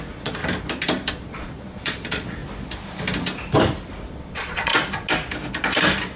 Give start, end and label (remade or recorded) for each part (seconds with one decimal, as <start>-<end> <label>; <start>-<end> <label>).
0.0-0.4 remade; 0.4-1.1 recorded; 1.1-2.4 remade; 2.4-4.1 recorded; 4.1-4.7 remade; 4.7-6.2 recorded